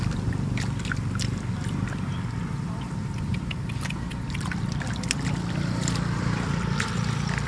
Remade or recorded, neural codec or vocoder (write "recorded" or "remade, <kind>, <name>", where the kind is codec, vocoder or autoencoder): recorded